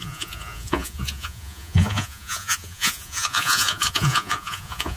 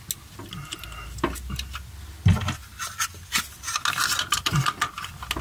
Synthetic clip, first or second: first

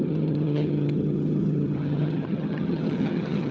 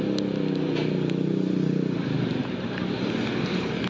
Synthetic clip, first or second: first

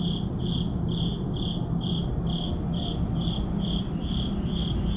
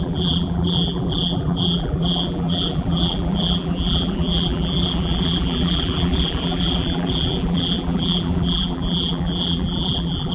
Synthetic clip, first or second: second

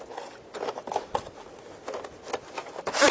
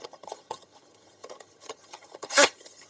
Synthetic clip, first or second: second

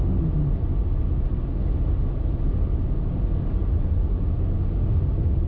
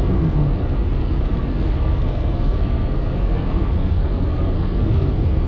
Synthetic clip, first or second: second